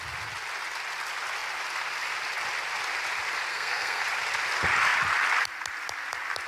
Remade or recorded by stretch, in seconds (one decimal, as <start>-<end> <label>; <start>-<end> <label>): 0.0-3.5 recorded; 3.5-4.0 remade; 4.0-6.5 recorded